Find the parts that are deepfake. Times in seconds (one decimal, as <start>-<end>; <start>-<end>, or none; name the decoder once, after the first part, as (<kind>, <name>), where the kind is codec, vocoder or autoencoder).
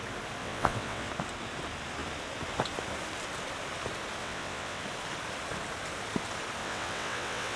0.4-1.1 (vocoder, WaveNeXt); 4.2-4.8; 6.6-7.6